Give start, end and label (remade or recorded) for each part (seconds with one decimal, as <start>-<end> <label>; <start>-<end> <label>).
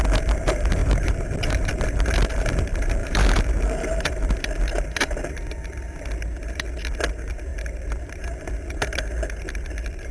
0.0-0.8 recorded; 0.8-1.7 remade; 1.7-3.0 recorded; 3.0-4.3 remade; 4.3-7.5 recorded; 7.5-8.1 remade; 8.1-10.1 recorded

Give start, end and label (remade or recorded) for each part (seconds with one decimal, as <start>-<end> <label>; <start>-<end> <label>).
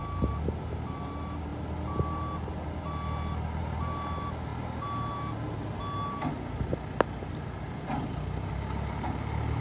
0.0-9.6 recorded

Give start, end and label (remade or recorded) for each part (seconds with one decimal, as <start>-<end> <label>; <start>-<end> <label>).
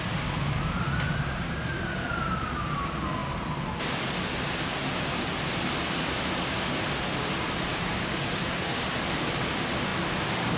0.0-7.7 recorded; 7.7-8.9 remade; 8.9-10.6 recorded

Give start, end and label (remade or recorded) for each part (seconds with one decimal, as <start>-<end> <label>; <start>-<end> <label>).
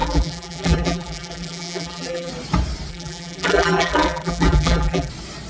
0.0-2.3 remade; 2.3-2.9 recorded; 2.9-5.1 remade; 5.1-5.5 recorded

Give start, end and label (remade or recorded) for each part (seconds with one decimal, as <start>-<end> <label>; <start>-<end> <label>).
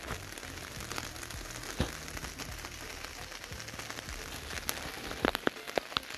0.0-6.2 recorded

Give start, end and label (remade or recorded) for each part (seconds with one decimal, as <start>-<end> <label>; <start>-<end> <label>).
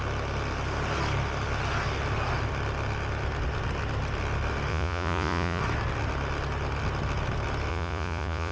0.0-4.7 recorded; 4.7-5.6 remade; 5.6-7.7 recorded; 7.7-8.5 remade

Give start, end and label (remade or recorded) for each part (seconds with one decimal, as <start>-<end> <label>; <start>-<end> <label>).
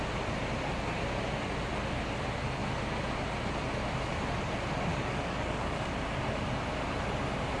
0.0-4.9 recorded; 4.9-5.9 remade; 5.9-7.6 recorded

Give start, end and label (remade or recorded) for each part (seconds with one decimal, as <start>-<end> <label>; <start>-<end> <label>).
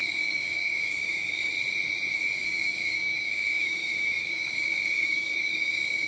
0.0-1.5 remade; 1.5-2.4 recorded; 2.4-6.1 remade